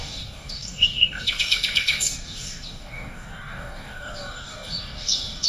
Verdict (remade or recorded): remade